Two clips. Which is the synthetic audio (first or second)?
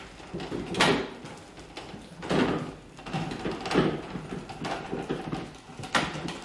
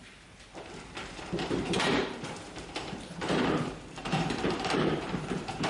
second